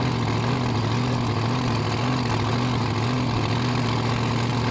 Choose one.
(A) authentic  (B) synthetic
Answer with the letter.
A